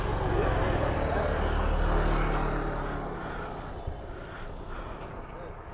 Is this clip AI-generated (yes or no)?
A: no